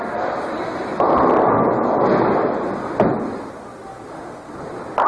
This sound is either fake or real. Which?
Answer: real